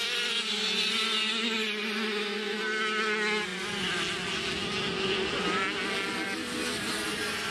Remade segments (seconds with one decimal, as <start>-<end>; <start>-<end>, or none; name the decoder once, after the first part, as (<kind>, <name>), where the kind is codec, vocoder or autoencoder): none